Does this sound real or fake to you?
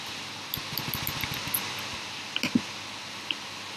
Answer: real